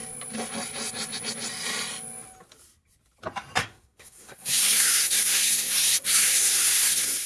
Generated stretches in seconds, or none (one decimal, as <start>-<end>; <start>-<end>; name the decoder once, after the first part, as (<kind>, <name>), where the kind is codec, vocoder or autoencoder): 3.6-7.3 (codec, SNAC)

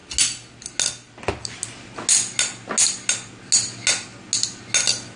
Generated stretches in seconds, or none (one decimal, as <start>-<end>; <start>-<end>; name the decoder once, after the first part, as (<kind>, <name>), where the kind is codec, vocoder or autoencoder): none

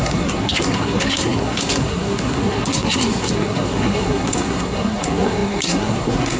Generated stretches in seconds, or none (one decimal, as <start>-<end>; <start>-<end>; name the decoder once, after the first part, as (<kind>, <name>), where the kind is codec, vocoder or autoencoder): 0.0-6.4 (codec, SNAC)

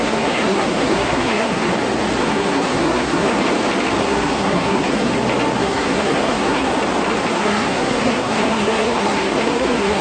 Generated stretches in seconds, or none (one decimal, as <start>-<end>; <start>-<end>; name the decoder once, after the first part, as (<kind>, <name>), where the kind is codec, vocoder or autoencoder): 0.0-1.6 (codec, SNAC); 2.2-3.4; 4.0-5.1; 5.6-6.7; 7.3-10.0